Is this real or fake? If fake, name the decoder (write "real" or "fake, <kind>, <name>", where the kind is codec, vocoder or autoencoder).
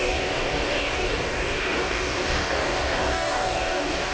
fake, codec, DAC